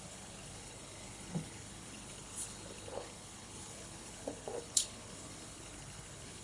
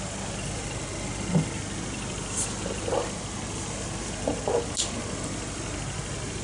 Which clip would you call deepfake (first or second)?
first